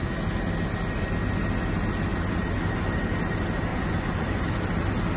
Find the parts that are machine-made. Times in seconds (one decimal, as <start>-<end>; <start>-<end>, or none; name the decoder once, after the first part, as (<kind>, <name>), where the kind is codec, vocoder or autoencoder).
3.7-4.4 (vocoder, Vocos)